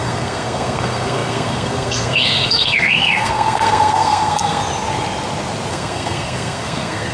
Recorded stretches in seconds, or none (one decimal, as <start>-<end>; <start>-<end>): 4.6-5.7